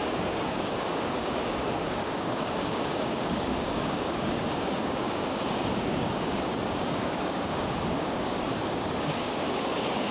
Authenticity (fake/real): fake